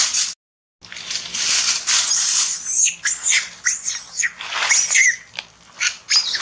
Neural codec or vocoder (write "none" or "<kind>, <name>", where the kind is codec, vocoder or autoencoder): none